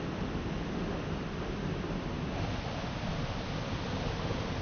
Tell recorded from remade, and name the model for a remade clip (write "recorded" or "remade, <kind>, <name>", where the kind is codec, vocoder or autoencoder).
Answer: recorded